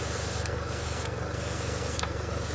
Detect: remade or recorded remade